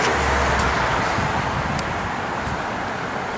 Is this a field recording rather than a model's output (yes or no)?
yes